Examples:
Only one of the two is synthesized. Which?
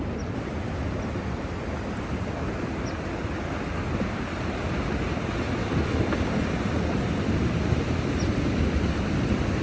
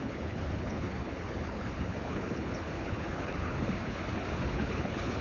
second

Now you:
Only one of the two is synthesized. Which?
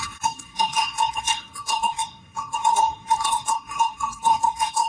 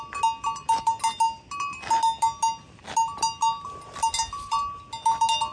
first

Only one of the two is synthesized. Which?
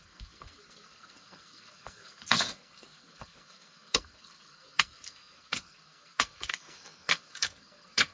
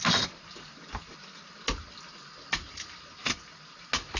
first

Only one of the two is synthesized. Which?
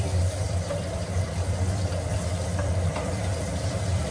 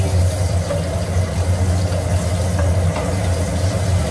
first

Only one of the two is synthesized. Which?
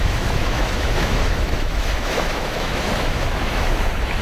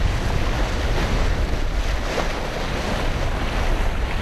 first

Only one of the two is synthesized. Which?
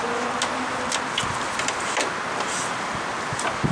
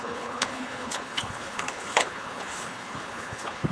second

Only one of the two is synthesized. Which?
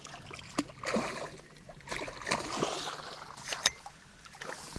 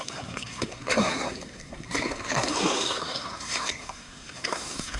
second